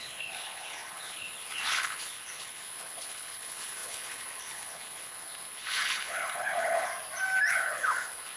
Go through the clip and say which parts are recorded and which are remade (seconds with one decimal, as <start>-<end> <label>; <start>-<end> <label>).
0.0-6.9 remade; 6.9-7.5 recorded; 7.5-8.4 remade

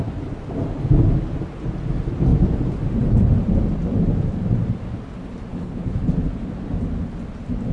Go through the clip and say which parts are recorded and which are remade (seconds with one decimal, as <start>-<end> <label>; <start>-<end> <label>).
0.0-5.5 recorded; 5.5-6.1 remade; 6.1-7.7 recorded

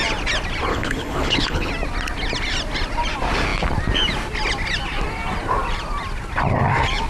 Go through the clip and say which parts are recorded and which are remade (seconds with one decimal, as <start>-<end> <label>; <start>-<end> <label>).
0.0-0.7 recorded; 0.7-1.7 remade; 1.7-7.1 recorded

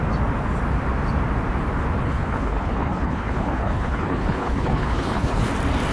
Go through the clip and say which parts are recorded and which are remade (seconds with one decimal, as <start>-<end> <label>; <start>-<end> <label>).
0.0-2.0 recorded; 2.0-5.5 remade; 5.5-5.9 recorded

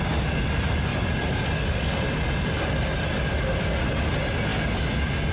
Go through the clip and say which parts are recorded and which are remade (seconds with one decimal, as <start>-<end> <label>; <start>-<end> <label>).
0.0-5.3 recorded

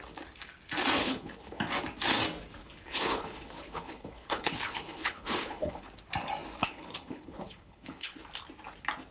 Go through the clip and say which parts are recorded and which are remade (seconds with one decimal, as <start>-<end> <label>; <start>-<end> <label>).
0.0-1.0 recorded; 1.0-1.6 remade; 1.6-2.6 recorded; 2.6-5.9 remade; 5.9-6.6 recorded; 6.6-8.2 remade; 8.2-9.1 recorded

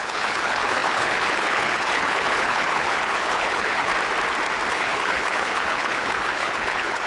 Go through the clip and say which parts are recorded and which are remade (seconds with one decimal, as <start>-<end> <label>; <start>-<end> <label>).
0.0-3.9 remade; 3.9-4.7 recorded; 4.7-7.1 remade

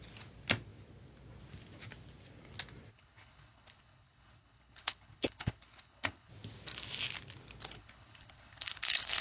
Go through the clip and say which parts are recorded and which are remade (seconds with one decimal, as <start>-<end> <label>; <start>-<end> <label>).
0.0-2.9 recorded; 2.9-6.3 remade; 6.3-7.8 recorded; 7.8-9.2 remade